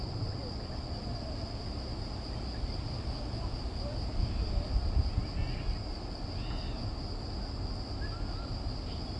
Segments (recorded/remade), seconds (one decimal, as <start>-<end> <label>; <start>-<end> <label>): 0.0-9.2 recorded